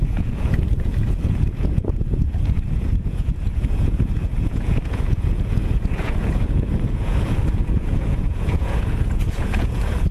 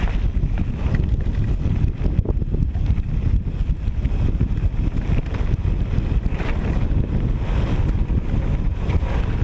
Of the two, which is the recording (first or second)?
second